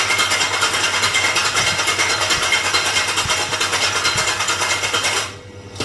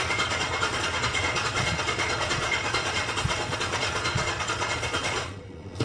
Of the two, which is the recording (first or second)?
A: first